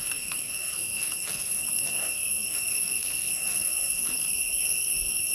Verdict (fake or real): fake